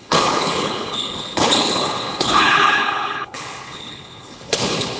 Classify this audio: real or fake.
fake